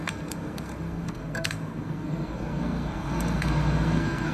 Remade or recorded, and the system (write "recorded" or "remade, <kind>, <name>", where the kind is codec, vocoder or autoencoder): remade, codec, SNAC